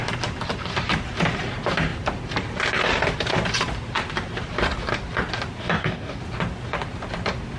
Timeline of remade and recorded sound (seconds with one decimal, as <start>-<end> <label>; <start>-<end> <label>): 0.0-5.6 recorded; 5.6-6.2 remade; 6.2-7.6 recorded